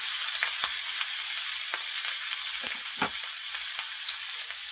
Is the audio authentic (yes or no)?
yes